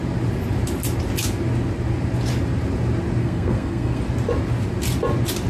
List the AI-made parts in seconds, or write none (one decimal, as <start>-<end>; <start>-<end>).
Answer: 3.2-4.0